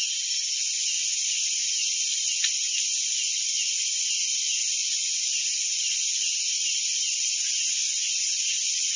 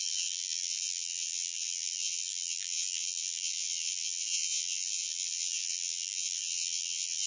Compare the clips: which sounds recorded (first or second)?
first